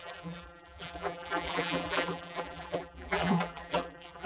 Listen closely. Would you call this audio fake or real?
fake